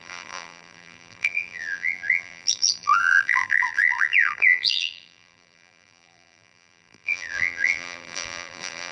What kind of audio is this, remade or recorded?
remade